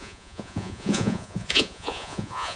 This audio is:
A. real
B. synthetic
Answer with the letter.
B